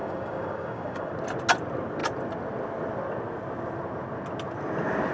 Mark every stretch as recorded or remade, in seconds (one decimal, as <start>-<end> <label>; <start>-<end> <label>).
0.0-1.1 remade; 1.1-5.1 recorded